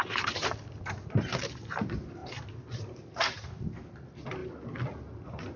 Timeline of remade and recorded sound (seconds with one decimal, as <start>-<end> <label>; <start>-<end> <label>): 0.0-5.6 recorded